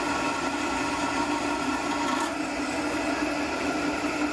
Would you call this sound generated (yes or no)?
no